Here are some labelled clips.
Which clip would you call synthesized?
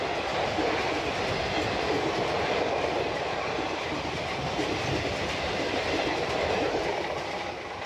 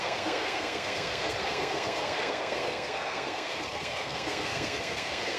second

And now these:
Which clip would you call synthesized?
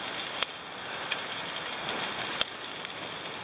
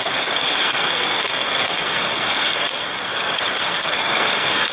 second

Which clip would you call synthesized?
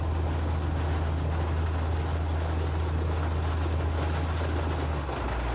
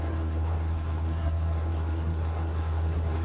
second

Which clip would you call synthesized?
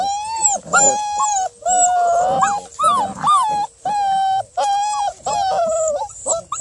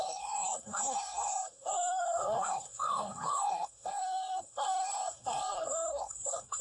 second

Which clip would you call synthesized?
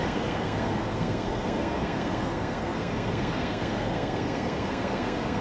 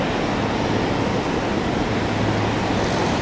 first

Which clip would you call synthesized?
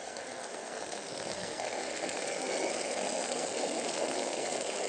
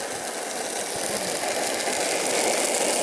first